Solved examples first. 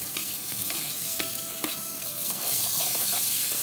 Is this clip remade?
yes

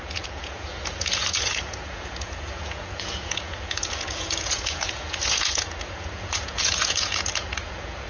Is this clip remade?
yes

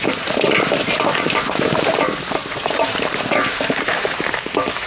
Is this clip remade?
yes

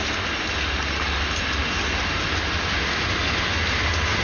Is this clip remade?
no